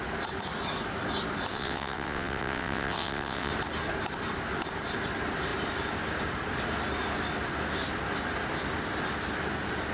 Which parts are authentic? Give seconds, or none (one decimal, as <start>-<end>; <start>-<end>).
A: 0.0-1.5; 3.5-9.9